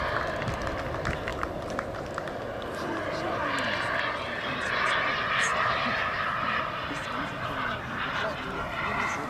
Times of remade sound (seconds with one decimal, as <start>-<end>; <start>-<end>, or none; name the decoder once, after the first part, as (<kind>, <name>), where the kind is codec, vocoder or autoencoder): none

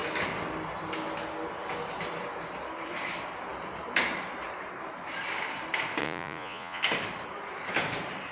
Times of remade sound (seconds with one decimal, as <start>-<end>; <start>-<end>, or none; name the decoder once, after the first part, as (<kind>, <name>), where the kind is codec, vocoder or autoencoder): 6.0-6.8 (vocoder, Vocos)

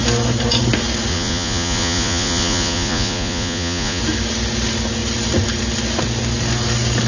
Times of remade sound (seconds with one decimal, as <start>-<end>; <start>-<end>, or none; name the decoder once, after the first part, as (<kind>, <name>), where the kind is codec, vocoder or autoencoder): 1.1-4.0 (vocoder, Vocos)

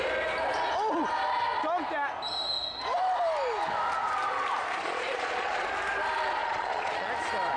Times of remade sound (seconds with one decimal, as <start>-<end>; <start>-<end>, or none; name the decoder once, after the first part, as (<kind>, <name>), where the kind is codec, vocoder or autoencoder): 4.8-5.7 (vocoder, Vocos); 6.4-7.1

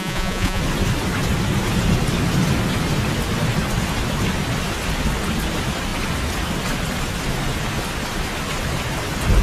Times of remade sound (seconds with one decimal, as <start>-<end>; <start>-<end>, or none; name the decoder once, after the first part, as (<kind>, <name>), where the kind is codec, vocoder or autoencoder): 0.0-0.6 (vocoder, Vocos)